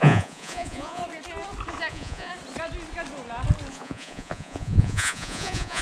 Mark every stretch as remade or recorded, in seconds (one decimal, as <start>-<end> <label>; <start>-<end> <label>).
0.0-1.0 remade; 1.0-1.9 recorded; 1.9-2.3 remade; 2.3-3.7 recorded; 3.7-5.8 remade